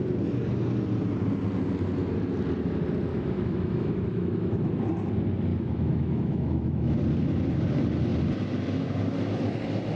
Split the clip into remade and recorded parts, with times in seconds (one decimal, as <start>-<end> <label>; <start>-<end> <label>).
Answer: 0.0-3.1 recorded; 3.1-4.7 remade; 4.7-5.5 recorded; 5.5-6.9 remade; 6.9-10.0 recorded